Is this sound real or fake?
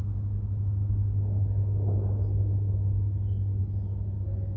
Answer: real